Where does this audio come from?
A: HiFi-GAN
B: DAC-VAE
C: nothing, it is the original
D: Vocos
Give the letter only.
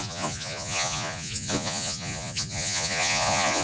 D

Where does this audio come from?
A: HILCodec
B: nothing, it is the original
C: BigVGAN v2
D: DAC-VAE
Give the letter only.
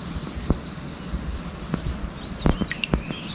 B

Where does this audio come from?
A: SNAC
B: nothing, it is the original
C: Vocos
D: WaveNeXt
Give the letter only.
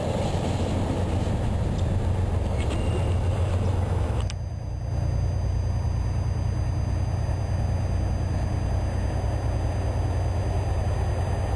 B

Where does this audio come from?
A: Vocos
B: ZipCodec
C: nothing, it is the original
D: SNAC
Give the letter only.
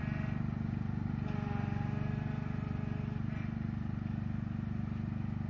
C